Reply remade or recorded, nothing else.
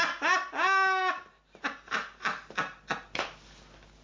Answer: recorded